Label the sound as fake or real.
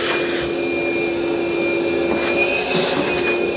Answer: real